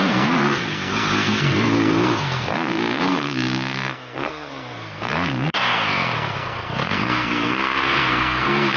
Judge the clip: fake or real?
fake